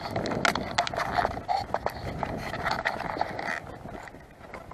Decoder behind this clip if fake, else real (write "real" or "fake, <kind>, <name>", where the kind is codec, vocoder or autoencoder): real